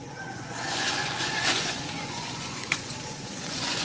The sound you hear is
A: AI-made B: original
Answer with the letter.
A